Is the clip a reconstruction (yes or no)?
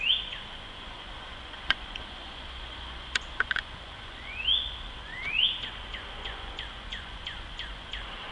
yes